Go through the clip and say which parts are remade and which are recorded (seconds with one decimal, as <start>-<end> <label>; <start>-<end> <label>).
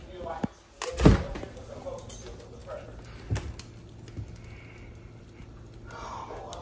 0.0-6.6 recorded